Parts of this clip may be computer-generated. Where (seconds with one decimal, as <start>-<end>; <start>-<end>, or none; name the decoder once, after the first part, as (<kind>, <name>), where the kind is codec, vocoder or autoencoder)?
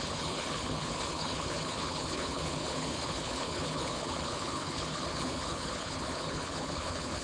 0.0-7.2 (codec, HILCodec)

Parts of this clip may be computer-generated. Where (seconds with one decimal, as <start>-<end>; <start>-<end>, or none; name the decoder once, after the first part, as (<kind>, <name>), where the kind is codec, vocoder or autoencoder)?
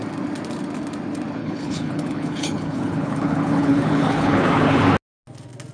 1.4-4.8 (codec, HILCodec)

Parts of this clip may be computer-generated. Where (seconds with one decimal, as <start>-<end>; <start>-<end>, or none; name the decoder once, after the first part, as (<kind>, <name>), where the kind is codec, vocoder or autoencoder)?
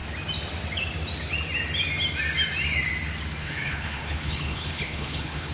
3.4-5.5 (codec, HILCodec)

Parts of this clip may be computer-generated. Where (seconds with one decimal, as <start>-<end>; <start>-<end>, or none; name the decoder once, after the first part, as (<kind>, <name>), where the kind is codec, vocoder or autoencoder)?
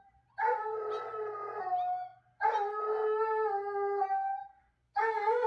none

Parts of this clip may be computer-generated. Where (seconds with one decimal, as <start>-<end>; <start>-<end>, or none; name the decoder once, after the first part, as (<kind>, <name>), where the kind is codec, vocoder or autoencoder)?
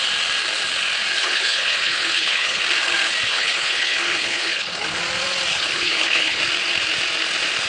1.2-2.6 (codec, HILCodec); 3.3-5.0; 5.5-6.4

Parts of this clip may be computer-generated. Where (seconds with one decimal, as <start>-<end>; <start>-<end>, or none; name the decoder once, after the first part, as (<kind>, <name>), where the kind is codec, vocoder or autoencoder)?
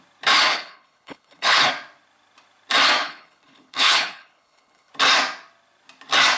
0.5-1.7 (codec, HILCodec); 3.0-4.9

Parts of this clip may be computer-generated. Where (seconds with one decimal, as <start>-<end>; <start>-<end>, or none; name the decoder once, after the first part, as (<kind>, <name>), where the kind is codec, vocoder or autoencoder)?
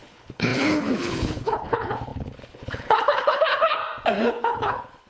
0.0-3.8 (codec, HILCodec); 4.3-5.1